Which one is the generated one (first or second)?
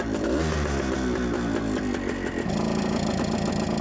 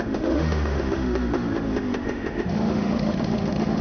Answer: second